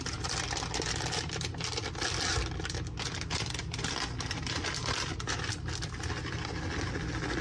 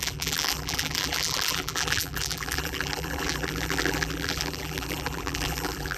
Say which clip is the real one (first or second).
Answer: first